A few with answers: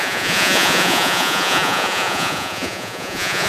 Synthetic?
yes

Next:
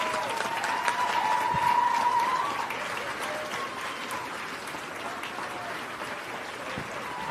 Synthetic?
no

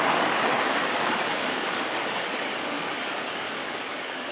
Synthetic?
yes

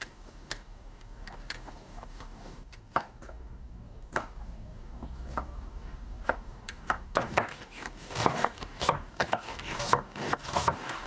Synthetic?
yes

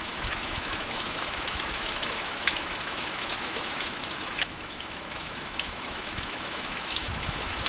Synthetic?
yes